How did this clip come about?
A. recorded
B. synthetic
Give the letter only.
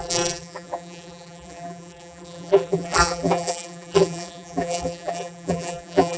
B